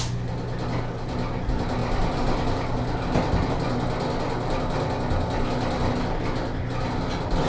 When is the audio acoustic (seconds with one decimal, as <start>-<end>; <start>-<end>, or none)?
0.0-7.5